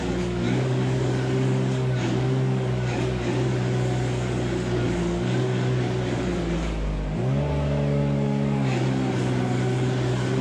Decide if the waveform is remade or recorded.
remade